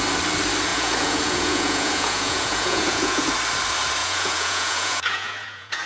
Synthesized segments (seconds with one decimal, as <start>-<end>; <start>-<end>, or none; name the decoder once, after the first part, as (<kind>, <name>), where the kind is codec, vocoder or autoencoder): 0.7-3.3 (vocoder, Vocos); 4.0-5.9